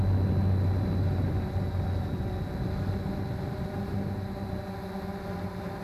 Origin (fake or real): real